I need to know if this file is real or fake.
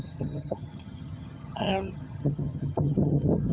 fake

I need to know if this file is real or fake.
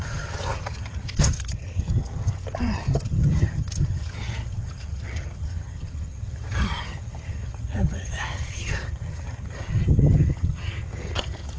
fake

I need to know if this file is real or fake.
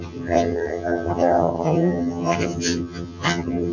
fake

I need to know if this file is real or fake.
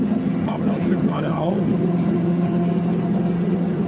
fake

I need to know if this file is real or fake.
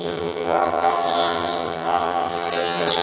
fake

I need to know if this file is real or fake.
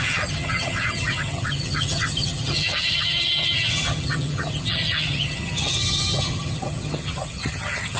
fake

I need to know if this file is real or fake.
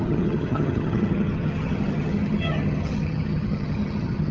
fake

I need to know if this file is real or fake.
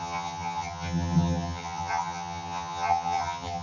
fake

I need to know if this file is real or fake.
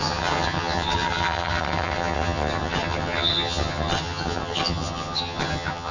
fake